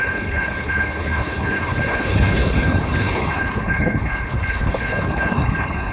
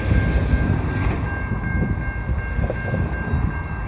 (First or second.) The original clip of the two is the second